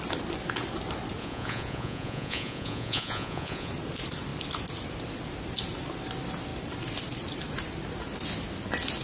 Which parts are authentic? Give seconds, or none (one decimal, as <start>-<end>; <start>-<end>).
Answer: 0.0-1.2; 3.7-9.0